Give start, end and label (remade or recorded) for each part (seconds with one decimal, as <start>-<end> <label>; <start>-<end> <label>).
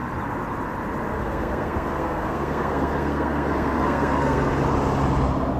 0.0-1.1 recorded; 1.1-4.5 remade; 4.5-5.6 recorded